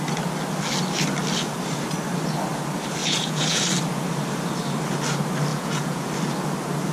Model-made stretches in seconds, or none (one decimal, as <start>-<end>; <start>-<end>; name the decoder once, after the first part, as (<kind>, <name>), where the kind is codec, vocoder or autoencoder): 3.0-3.6 (vocoder, Vocos); 5.5-6.1